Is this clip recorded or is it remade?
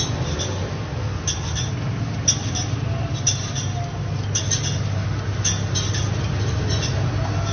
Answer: recorded